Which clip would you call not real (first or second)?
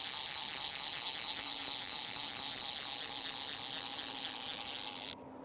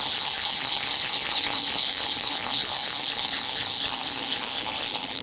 second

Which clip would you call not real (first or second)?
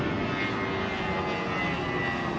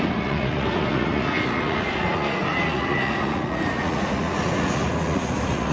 second